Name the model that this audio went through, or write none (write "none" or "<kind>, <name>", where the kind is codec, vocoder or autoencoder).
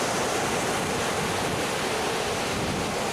none